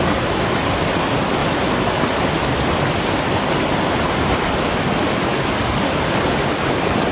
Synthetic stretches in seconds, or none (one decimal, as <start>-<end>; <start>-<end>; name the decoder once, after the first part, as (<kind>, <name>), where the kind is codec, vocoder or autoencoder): none